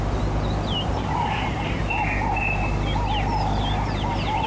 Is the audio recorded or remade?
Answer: recorded